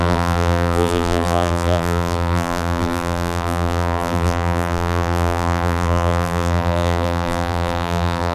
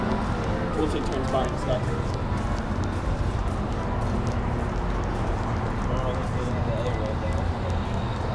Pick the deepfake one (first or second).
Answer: first